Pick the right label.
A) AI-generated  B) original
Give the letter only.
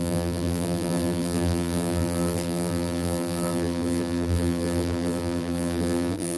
A